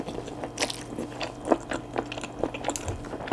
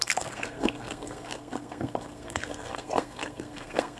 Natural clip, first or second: first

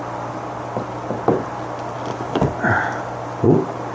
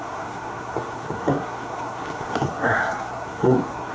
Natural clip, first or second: first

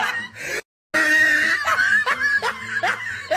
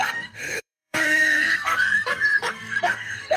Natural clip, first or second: first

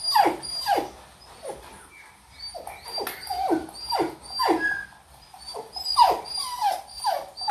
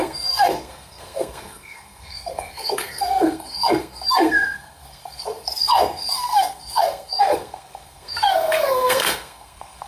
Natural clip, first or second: first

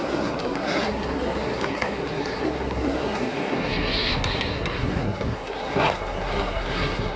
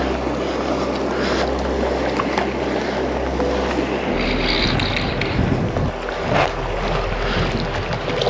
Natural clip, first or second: second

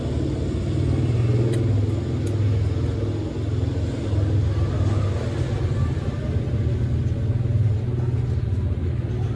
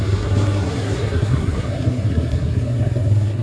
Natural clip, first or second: first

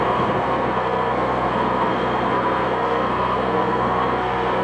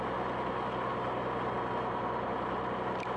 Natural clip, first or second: second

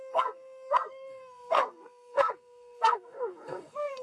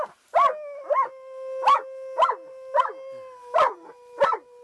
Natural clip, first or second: second